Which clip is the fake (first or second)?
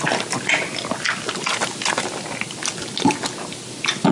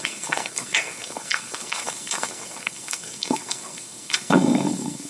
second